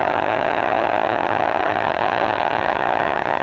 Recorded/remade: remade